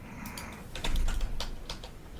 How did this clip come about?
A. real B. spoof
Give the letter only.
A